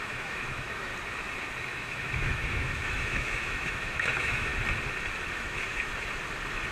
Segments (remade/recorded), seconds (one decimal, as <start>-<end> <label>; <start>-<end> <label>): 0.0-0.9 remade; 0.9-1.6 recorded; 1.6-4.5 remade; 4.5-5.3 recorded; 5.3-5.9 remade; 5.9-6.7 recorded